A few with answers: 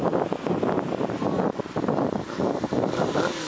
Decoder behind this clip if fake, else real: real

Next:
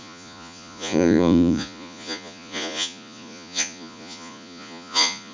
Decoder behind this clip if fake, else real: fake, vocoder, Vocos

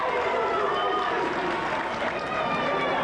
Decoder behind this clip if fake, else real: real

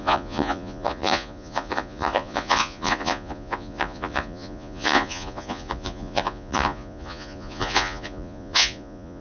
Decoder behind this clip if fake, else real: fake, vocoder, Vocos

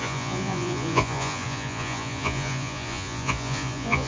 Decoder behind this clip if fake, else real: fake, vocoder, Vocos